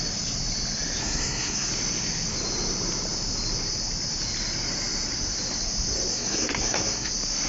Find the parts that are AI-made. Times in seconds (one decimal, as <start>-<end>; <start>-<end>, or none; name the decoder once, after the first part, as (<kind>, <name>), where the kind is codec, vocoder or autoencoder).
1.0-1.7 (codec, SNAC); 6.1-7.1